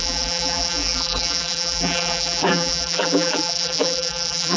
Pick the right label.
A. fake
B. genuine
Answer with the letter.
A